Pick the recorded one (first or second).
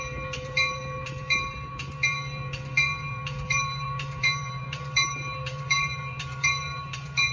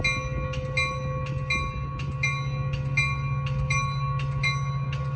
second